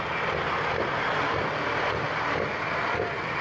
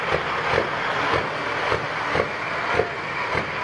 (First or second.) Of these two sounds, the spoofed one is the first